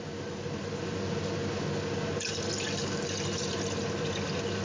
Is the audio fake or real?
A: real